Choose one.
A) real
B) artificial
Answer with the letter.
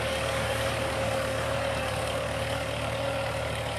B